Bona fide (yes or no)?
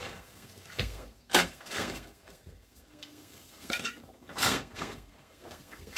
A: no